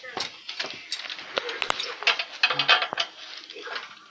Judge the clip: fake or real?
real